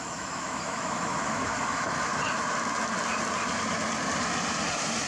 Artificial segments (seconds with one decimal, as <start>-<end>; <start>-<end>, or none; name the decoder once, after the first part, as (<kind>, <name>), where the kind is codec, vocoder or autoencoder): 0.0-2.1 (autoencoder, DAC-VAE)